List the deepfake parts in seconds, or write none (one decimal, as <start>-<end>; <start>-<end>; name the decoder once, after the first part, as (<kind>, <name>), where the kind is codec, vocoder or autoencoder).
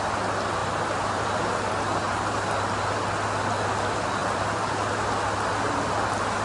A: 0.6-1.7 (vocoder, BigVGAN v2); 2.1-2.8; 4.2-4.7